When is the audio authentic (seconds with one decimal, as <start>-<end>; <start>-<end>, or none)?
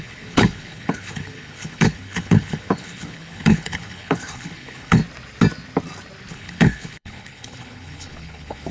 5.0-6.3